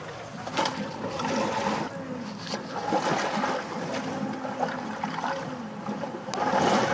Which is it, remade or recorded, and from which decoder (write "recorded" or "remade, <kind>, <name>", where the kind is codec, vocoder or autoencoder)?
recorded